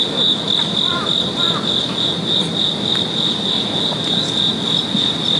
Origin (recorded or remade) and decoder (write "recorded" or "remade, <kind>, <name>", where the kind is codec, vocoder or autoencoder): recorded